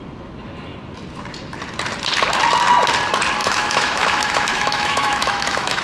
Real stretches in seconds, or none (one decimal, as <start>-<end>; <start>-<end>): 0.0-3.4